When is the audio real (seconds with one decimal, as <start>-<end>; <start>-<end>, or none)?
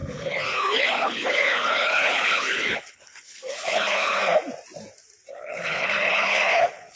4.2-5.3